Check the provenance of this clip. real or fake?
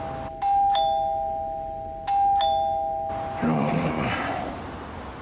real